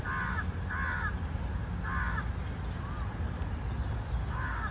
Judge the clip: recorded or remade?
recorded